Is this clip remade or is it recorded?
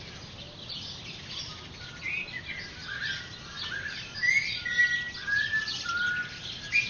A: recorded